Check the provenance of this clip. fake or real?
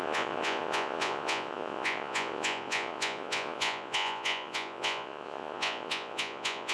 fake